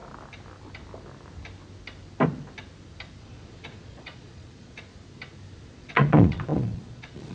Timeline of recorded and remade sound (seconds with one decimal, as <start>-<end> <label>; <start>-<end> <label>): 0.0-3.2 recorded; 3.2-4.9 remade; 4.9-5.7 recorded; 5.7-7.3 remade